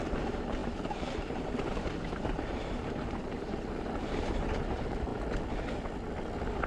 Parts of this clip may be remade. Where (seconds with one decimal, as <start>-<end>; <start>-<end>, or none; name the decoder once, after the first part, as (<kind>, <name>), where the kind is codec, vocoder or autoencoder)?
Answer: 0.0-5.1 (vocoder, BigVGAN v2)